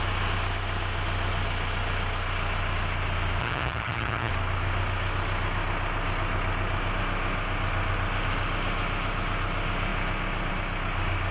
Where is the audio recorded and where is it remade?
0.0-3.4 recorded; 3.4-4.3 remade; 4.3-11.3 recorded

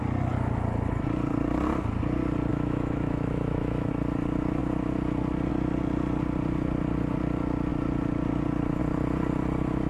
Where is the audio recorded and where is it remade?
0.0-2.5 recorded; 2.5-3.9 remade; 3.9-9.9 recorded

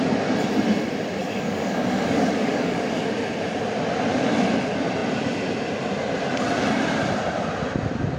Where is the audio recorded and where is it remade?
0.0-1.2 recorded; 1.2-3.0 remade; 3.0-8.2 recorded